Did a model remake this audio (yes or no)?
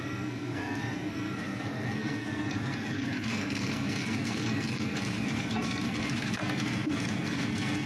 yes